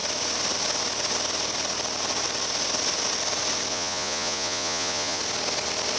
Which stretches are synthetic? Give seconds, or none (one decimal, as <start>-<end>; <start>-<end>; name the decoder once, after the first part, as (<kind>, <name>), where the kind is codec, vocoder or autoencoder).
3.7-5.2 (vocoder, Vocos)